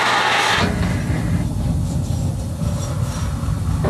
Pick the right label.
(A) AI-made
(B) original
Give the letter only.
B